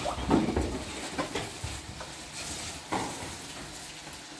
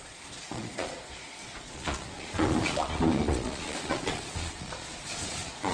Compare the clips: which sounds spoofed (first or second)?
second